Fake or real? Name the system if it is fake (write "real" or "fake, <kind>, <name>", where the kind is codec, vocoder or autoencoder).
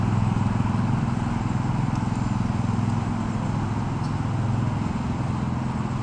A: real